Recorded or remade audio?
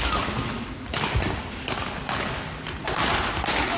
recorded